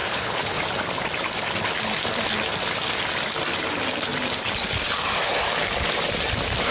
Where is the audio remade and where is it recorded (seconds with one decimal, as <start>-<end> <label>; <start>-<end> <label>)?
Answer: 0.0-0.6 remade; 0.6-6.7 recorded